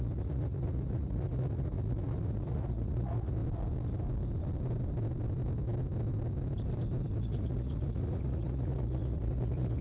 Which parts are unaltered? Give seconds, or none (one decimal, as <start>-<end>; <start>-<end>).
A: 3.4-7.2